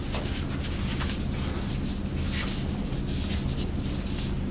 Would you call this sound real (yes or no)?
yes